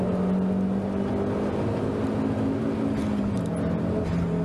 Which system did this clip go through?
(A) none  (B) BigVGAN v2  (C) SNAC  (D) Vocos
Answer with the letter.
A